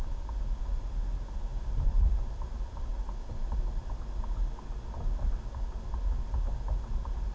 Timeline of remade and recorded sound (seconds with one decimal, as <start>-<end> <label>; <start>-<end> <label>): 0.0-7.3 recorded